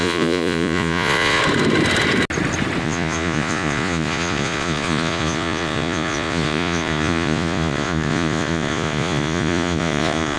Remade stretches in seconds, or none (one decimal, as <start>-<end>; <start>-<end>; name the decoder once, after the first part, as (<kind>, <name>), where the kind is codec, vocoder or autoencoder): 0.0-1.4 (vocoder, Vocos); 2.8-10.4